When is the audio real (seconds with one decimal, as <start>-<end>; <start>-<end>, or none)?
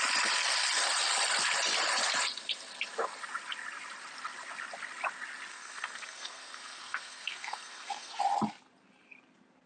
0.0-5.5; 8.2-9.7